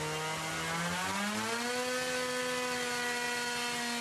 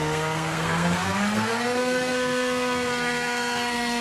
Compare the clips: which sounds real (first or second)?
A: first